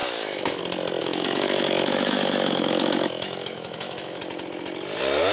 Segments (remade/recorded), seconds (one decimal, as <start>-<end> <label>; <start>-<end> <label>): 0.0-0.6 remade; 0.6-1.0 recorded; 1.0-4.2 remade; 4.2-5.3 recorded

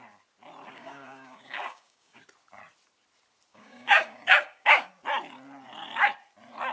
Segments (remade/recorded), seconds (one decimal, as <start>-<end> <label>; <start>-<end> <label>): 0.0-0.7 recorded; 0.7-2.2 remade; 2.2-3.5 recorded; 3.5-4.9 remade; 4.9-6.7 recorded

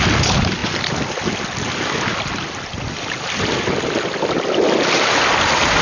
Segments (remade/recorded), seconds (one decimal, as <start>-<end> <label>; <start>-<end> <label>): 0.0-5.8 recorded

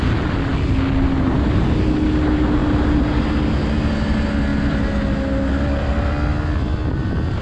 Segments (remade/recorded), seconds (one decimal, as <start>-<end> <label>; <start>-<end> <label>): 0.0-7.4 recorded

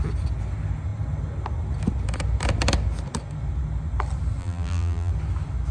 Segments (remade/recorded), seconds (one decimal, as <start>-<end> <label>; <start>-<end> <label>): 0.0-4.4 recorded; 4.4-5.1 remade; 5.1-5.7 recorded

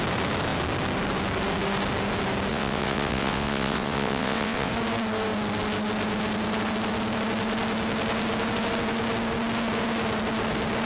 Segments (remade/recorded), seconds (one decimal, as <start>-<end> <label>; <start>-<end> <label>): 0.0-2.5 recorded; 2.5-4.7 remade; 4.7-10.8 recorded

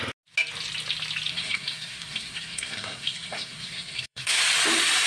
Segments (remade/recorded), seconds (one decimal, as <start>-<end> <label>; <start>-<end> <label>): 0.0-1.3 recorded; 1.3-4.4 remade; 4.4-5.1 recorded